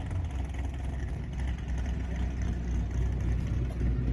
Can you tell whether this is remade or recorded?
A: recorded